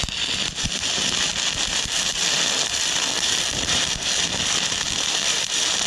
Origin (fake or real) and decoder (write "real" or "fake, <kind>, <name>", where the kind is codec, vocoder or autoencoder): fake, vocoder, BigVGAN v2